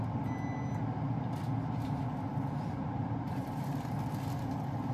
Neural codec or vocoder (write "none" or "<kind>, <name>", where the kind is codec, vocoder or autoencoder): none